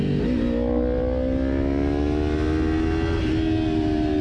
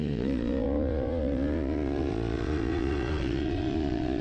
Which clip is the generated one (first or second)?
second